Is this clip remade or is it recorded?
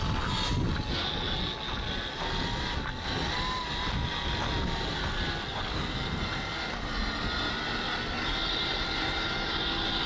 recorded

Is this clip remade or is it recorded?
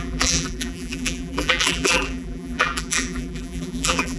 remade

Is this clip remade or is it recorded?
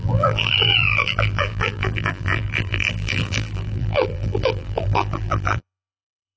remade